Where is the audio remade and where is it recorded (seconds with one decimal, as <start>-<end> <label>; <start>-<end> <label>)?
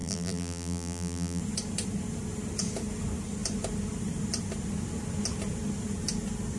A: 0.0-1.4 remade; 1.4-6.6 recorded